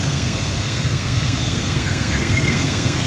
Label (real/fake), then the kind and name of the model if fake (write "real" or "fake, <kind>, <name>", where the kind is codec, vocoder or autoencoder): fake, codec, SNAC